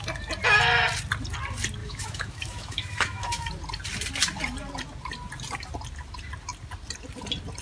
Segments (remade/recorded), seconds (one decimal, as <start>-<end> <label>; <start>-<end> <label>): 0.0-1.8 recorded; 1.8-3.5 remade; 3.5-7.6 recorded